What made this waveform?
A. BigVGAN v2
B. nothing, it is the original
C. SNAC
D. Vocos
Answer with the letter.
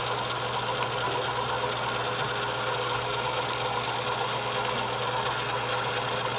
B